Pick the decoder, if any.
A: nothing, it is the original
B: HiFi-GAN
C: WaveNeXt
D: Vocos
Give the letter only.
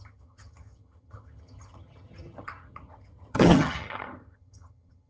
B